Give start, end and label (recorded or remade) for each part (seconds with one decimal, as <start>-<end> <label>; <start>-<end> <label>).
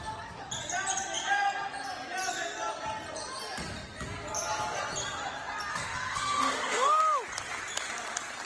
0.0-5.7 recorded; 5.7-7.0 remade; 7.0-8.4 recorded